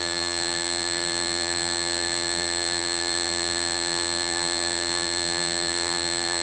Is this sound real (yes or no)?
no